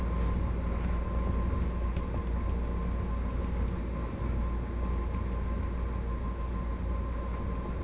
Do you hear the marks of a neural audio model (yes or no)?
no